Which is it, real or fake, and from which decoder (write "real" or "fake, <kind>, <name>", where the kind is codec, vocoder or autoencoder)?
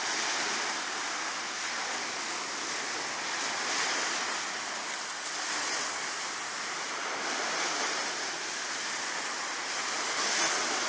real